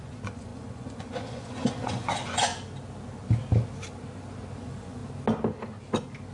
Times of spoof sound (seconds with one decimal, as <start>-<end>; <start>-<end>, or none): 0.0-2.5; 4.6-5.0